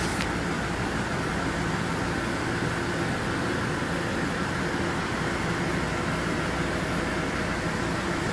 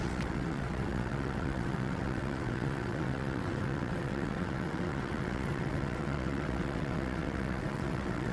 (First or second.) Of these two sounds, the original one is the first